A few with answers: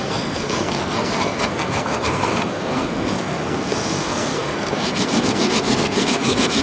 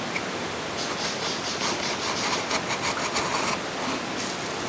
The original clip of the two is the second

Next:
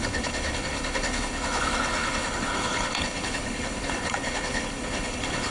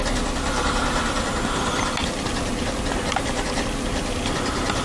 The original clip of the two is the second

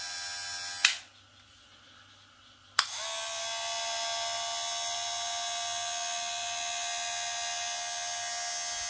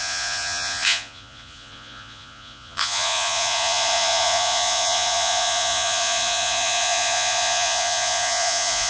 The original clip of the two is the first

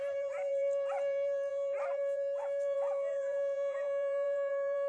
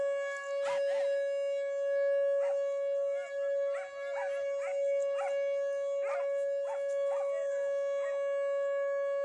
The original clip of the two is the second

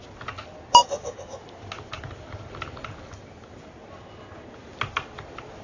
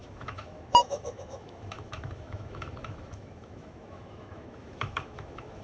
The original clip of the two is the first